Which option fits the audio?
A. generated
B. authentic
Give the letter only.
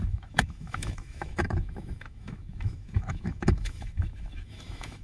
A